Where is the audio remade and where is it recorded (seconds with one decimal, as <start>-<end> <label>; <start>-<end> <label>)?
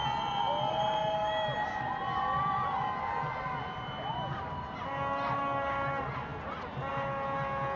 0.0-7.8 recorded